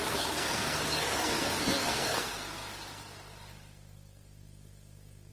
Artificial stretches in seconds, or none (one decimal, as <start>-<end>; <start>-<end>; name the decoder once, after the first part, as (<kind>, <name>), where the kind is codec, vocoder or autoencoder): 0.0-5.3 (codec, SNAC)